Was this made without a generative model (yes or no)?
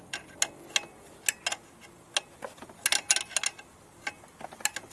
yes